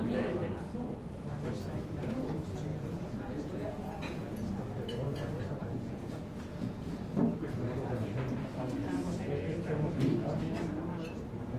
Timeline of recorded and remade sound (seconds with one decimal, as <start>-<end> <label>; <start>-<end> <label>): 0.0-2.7 recorded; 2.7-4.4 remade; 4.4-5.6 recorded; 5.6-7.0 remade; 7.0-11.6 recorded